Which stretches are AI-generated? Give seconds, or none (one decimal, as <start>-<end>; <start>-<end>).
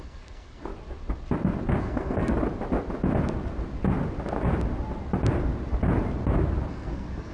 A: 0.0-0.7; 1.8-2.3; 6.7-7.3